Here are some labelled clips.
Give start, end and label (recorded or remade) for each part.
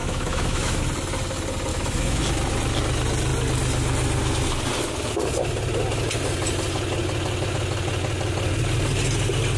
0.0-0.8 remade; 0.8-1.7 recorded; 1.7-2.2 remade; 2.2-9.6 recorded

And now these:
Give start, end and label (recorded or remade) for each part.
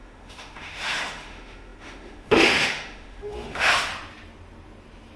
0.0-3.9 remade; 3.9-5.2 recorded